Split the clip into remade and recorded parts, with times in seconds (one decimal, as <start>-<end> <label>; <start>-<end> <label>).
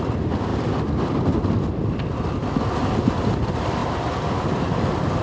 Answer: 0.0-5.2 recorded